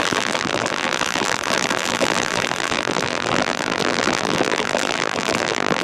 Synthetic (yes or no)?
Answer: yes